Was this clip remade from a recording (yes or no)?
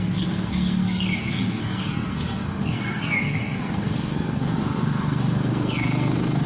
yes